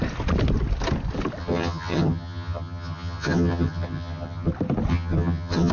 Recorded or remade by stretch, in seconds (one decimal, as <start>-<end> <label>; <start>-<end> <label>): 0.0-1.4 recorded; 1.4-4.5 remade; 4.5-4.9 recorded; 4.9-5.7 remade